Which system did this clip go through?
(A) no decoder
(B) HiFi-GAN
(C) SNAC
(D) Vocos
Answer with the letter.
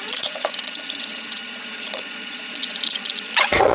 D